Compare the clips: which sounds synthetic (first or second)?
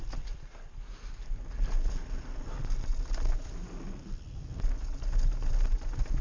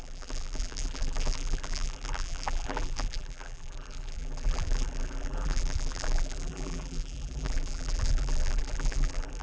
second